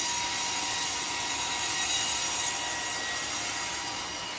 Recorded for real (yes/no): yes